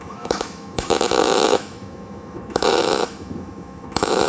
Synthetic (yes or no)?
yes